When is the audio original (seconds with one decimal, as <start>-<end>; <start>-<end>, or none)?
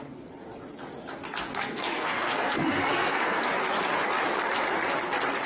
0.0-1.6; 3.5-5.5